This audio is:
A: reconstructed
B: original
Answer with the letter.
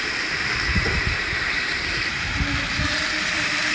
A